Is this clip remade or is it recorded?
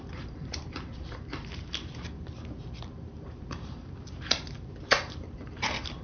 remade